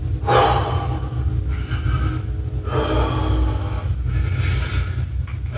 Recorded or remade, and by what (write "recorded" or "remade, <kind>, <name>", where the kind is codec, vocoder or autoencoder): recorded